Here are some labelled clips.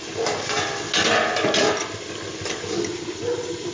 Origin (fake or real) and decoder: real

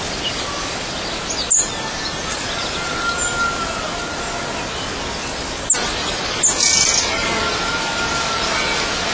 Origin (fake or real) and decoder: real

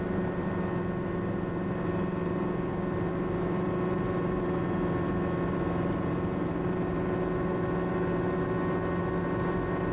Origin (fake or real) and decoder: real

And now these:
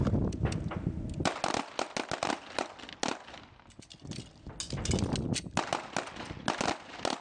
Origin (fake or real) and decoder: real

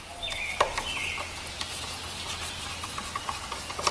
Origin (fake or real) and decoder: real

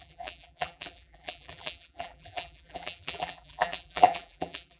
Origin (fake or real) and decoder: fake, vocoder, BigVGAN v2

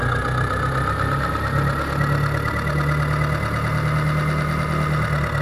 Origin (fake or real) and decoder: real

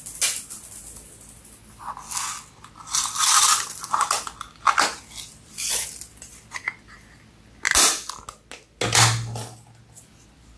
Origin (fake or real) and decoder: real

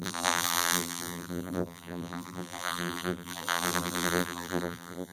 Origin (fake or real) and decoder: fake, vocoder, BigVGAN v2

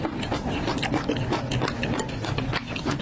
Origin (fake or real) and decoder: real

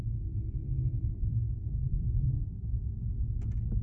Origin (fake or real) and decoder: real